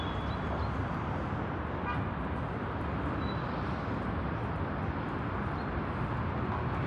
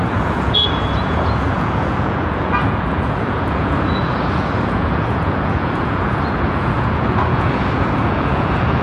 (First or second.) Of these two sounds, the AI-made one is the second